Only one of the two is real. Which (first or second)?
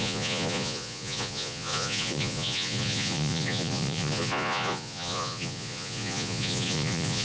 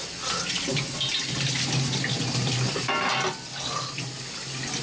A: second